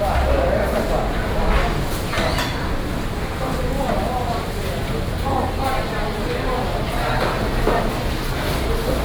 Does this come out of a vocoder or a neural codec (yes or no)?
no